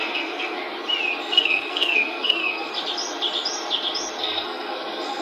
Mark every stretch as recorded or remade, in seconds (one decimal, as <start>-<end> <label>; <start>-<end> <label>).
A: 0.0-0.6 remade; 0.6-1.2 recorded; 1.2-2.7 remade; 2.7-4.2 recorded; 4.2-5.2 remade